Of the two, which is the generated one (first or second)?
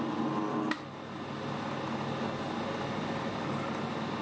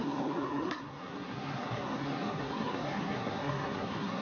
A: second